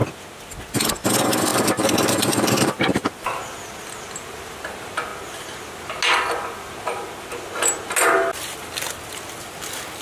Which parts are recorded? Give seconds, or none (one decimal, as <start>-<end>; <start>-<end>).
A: 0.0-1.5; 3.4-10.0